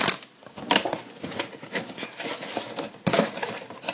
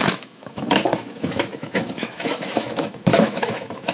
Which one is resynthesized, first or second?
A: second